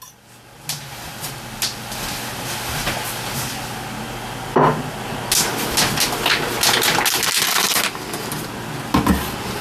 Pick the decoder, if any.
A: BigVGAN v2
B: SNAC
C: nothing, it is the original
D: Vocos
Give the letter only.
C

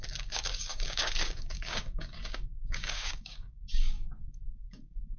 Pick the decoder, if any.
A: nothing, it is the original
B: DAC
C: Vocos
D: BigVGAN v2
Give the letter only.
B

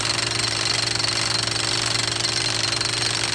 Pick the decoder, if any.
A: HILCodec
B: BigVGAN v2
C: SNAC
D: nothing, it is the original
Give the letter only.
D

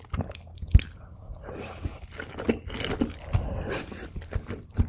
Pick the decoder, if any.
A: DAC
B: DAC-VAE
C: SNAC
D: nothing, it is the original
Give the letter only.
D